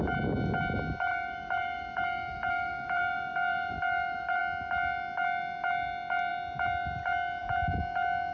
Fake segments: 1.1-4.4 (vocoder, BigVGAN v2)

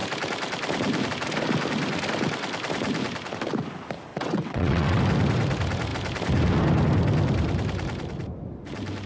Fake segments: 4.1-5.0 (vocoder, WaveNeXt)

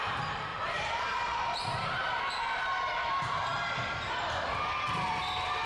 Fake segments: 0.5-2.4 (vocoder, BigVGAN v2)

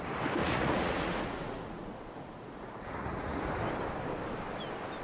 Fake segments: 0.4-3.4 (vocoder, Vocos)

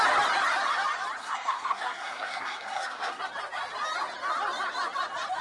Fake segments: 1.2-3.2 (codec, SNAC)

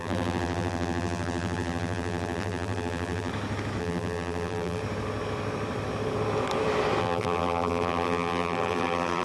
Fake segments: 0.0-3.3 (vocoder, BigVGAN v2); 3.8-4.8; 7.0-9.2

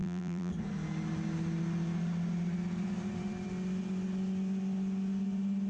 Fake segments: 0.0-0.5 (vocoder, BigVGAN v2)